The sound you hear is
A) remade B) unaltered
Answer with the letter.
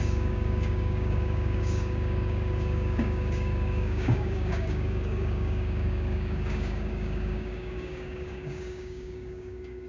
A